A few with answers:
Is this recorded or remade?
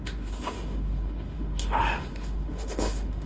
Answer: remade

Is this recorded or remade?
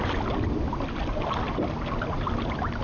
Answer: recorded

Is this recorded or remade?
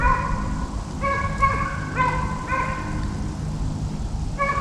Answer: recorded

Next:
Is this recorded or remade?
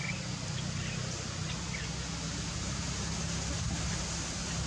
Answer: recorded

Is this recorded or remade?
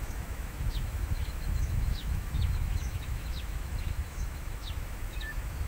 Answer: remade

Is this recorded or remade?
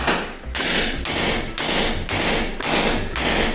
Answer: recorded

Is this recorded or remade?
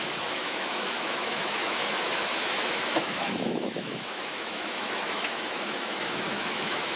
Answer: remade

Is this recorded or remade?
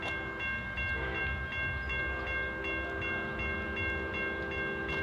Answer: recorded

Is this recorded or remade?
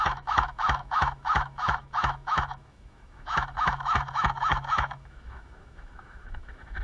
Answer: remade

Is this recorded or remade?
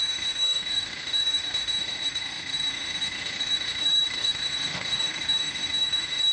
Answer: remade